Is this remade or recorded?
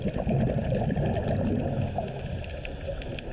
recorded